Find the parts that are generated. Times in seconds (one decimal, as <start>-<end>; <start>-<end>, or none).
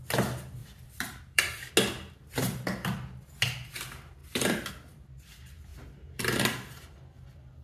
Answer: 0.6-1.7; 4.2-4.7